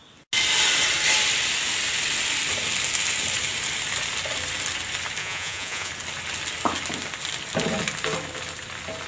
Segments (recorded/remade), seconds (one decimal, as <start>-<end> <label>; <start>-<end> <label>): 0.0-5.2 recorded; 5.2-5.9 remade; 5.9-9.1 recorded